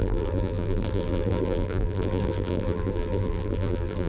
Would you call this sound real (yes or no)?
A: no